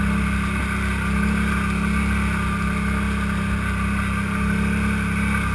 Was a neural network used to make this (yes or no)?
no